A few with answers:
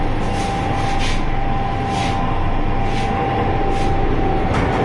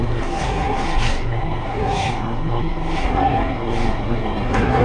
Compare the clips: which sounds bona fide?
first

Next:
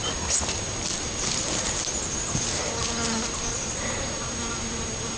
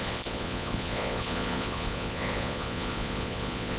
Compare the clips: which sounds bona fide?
first